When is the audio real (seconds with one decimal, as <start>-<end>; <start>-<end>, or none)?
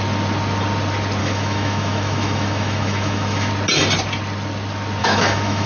0.0-1.2; 3.5-5.0